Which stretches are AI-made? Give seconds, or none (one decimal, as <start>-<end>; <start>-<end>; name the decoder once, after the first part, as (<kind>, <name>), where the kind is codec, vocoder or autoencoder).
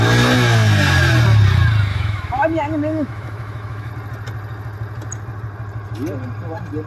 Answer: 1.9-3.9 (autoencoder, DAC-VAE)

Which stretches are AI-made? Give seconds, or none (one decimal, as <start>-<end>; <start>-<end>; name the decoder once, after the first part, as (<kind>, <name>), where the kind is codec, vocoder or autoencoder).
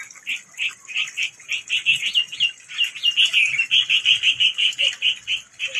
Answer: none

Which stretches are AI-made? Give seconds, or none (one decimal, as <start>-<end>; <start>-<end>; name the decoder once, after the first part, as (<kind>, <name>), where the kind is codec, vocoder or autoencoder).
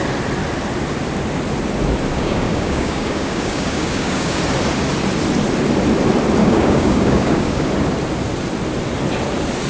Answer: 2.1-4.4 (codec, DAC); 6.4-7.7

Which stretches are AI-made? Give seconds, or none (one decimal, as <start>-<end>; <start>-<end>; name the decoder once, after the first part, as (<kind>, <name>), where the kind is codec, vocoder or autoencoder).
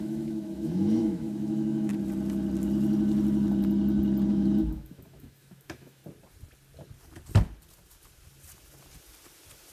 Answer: 0.0-1.9 (autoencoder, DAC-VAE); 4.3-6.0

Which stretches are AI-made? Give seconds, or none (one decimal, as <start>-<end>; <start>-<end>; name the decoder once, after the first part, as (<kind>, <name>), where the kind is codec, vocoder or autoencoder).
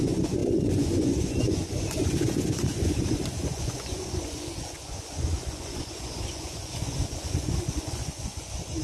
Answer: 0.0-8.8 (vocoder, Vocos)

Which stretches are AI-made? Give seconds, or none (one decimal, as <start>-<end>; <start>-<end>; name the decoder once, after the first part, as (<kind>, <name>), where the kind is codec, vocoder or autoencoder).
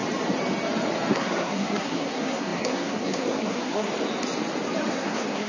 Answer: 1.1-3.9 (codec, SNAC); 4.9-5.5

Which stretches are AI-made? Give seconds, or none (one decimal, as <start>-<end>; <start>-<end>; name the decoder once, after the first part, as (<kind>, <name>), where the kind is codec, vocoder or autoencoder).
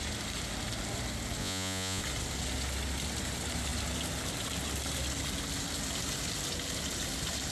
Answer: 1.4-2.0 (vocoder, Vocos)